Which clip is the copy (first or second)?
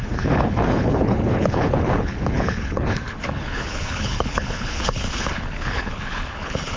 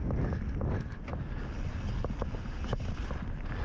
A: first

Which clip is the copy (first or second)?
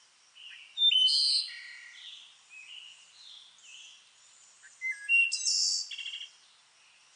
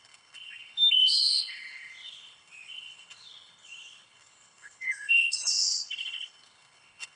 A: second